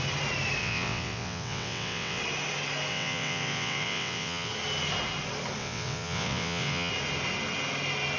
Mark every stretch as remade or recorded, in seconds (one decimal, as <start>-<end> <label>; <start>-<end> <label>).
0.0-0.6 recorded; 0.6-2.2 remade; 2.2-2.9 recorded; 2.9-4.5 remade; 4.5-5.6 recorded; 5.6-6.9 remade; 6.9-8.2 recorded